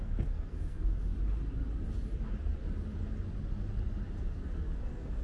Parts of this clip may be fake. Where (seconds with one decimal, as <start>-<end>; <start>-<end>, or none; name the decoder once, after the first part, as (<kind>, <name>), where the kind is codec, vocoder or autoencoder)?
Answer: 0.0-1.1 (codec, SNAC); 4.2-5.2